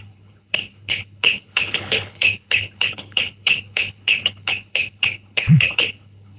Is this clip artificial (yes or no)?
yes